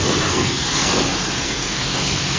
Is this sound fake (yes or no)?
yes